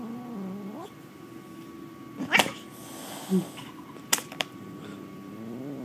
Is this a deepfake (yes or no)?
no